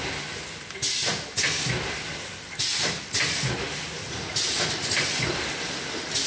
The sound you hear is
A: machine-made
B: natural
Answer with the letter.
B